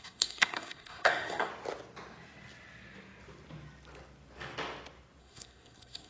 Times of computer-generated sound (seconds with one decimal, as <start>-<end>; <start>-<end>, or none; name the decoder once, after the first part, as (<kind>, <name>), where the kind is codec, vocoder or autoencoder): 0.0-1.5 (codec, SNAC); 5.2-6.1